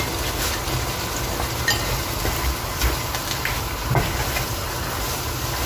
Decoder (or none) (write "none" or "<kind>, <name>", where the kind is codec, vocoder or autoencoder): none